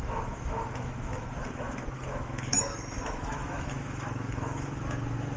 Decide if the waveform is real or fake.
fake